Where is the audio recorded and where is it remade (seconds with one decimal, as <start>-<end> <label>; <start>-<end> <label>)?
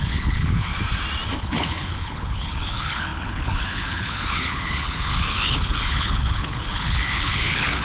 0.0-0.7 remade; 0.7-1.4 recorded; 1.4-7.8 remade